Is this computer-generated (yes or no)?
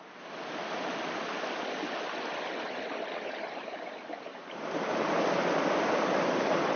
no